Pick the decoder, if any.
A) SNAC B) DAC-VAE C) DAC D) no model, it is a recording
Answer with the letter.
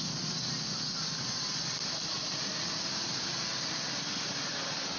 D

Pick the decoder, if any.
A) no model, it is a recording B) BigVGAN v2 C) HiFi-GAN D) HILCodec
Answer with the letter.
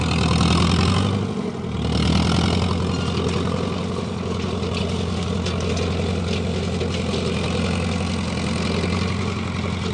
A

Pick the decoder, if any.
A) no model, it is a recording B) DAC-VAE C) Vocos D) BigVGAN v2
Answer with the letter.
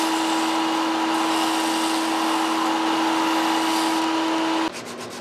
A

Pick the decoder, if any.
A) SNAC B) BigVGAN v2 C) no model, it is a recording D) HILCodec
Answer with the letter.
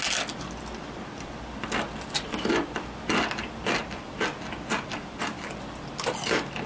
C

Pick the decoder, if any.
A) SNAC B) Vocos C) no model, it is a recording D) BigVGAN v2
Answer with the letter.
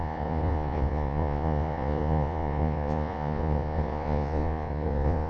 B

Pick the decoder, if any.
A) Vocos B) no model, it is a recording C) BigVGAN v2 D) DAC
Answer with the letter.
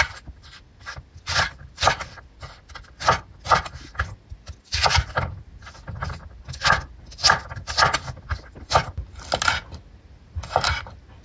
B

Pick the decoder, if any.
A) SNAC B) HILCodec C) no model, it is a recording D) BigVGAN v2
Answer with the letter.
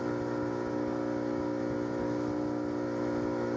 C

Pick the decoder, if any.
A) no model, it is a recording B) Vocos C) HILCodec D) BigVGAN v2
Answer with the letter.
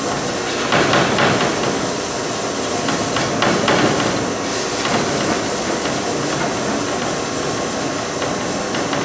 A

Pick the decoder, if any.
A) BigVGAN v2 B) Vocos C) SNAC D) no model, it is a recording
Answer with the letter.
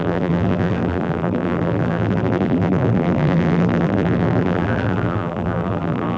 A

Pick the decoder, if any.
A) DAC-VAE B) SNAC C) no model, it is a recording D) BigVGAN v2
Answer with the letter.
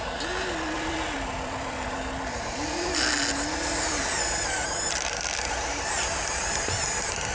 D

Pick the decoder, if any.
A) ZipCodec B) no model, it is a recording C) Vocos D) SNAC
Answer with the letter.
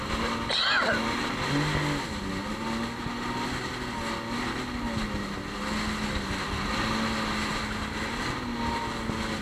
B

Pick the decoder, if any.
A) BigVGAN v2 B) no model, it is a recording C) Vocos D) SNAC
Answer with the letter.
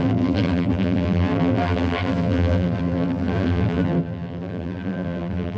A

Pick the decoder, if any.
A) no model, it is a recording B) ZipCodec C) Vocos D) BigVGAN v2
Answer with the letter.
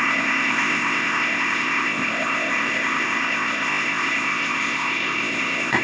B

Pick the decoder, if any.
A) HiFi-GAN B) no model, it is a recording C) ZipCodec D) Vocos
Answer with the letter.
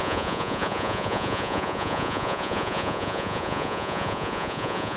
D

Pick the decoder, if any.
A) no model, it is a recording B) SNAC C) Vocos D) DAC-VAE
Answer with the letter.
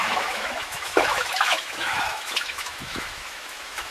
D